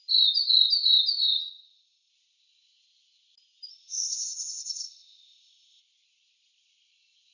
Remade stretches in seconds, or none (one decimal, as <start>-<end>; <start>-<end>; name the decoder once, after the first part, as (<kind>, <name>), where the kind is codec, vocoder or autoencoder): 1.4-2.1 (codec, ZipCodec); 3.7-5.8